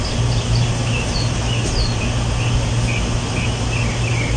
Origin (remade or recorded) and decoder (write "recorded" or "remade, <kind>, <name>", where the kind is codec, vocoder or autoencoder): recorded